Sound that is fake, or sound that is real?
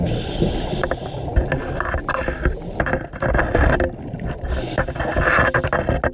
real